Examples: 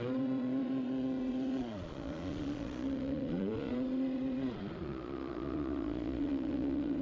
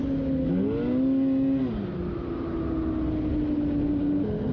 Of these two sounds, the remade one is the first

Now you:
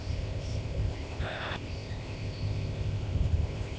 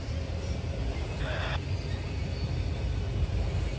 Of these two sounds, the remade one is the first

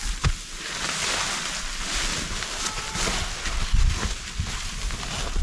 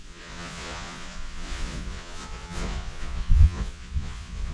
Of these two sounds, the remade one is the second